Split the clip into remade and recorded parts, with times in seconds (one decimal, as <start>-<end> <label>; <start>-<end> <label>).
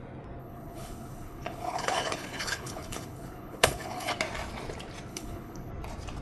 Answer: 0.0-0.4 recorded; 0.4-4.1 remade; 4.1-5.1 recorded; 5.1-5.7 remade; 5.7-6.2 recorded